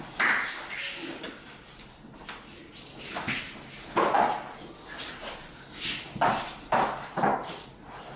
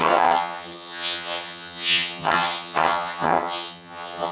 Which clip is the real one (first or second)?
first